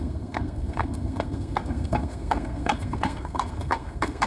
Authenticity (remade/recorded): remade